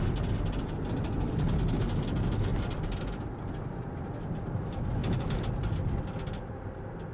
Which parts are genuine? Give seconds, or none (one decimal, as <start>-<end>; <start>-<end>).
0.0-5.0; 6.0-7.1